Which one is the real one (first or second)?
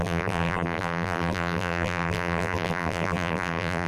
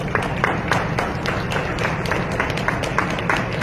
second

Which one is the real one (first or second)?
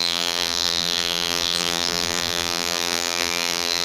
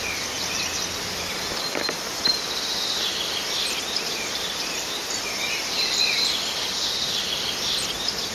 second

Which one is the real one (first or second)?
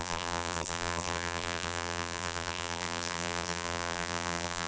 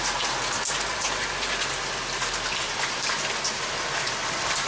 second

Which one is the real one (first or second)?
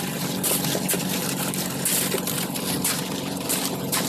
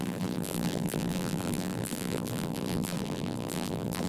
first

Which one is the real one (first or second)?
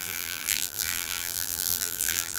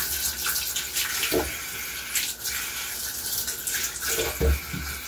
second